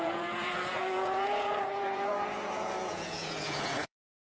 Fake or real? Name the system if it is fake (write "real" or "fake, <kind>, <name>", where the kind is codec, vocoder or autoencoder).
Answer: fake, vocoder, Vocos